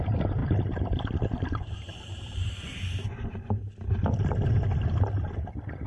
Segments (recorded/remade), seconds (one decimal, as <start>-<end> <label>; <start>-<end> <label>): 0.0-0.4 recorded; 0.4-3.5 remade; 3.5-5.9 recorded